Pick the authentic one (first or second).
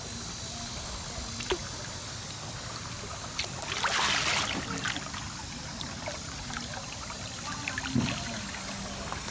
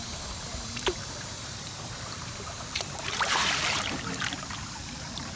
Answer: first